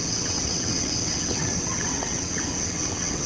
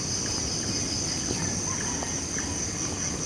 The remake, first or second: first